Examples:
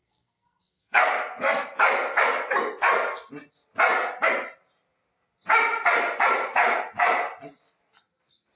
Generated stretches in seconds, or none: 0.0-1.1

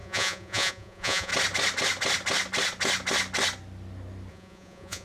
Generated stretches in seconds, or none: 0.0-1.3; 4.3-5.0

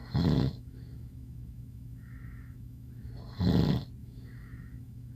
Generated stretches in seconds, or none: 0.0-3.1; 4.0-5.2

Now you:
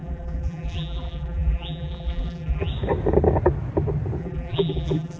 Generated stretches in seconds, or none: 0.0-2.7; 4.2-5.2

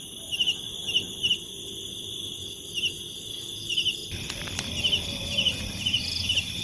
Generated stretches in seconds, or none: 0.0-0.8; 1.3-4.0; 5.1-6.6

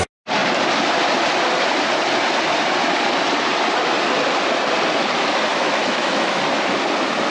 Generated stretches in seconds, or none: 5.5-6.4

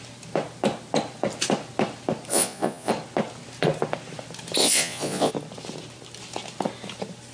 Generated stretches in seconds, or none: 2.3-2.9; 4.6-5.3

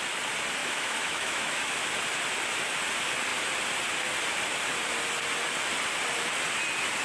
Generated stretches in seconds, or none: 0.6-1.7